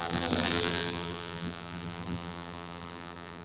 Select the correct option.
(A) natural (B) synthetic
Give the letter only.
B